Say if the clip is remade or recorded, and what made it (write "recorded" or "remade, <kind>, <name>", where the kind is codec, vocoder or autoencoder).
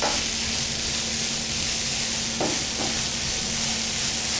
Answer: recorded